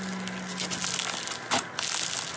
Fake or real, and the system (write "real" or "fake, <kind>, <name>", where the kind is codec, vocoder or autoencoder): real